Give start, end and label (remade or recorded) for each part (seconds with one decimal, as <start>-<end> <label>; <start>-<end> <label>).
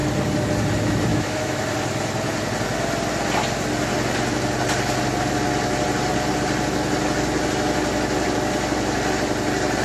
0.0-1.1 recorded; 1.1-1.6 remade; 1.6-9.8 recorded